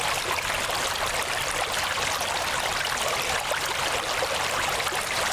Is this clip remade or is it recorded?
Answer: recorded